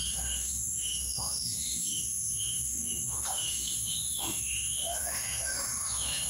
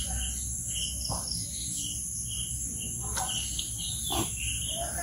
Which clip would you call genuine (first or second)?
second